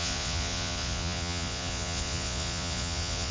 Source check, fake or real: fake